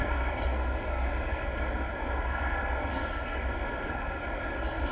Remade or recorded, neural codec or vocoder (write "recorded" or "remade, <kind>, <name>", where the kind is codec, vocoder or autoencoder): remade, codec, SNAC